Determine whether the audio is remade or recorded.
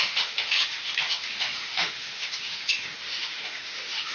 remade